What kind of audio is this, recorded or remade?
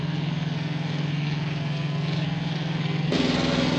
remade